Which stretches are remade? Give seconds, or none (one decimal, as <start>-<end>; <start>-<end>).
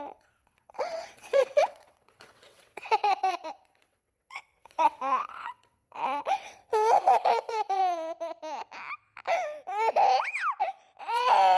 0.0-7.8; 11.0-11.6